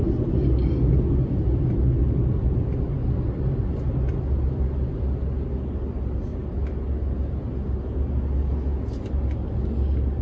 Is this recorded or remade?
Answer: recorded